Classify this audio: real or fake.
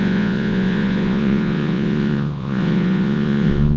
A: fake